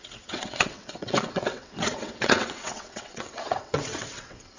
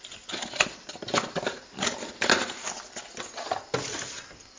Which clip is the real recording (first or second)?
second